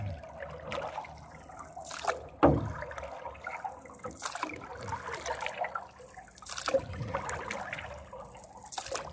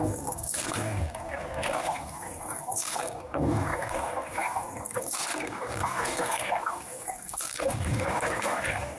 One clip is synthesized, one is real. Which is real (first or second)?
first